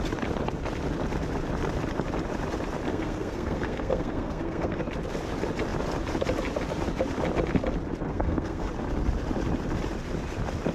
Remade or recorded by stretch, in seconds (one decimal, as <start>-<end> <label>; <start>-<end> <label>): 0.0-2.9 recorded; 2.9-4.8 remade; 4.8-8.1 recorded; 8.1-8.7 remade; 8.7-10.7 recorded